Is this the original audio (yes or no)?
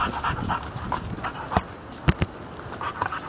yes